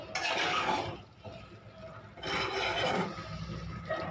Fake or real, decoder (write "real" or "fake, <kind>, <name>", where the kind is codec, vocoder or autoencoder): real